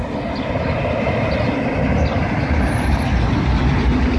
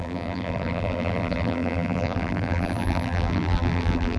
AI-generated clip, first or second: second